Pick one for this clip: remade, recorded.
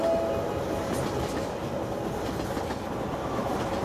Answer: recorded